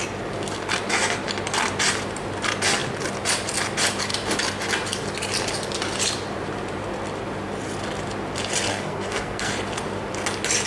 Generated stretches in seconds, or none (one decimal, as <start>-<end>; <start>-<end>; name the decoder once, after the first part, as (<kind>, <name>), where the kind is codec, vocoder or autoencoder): 8.7-9.5 (codec, SNAC)